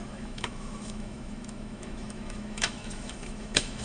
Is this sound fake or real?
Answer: fake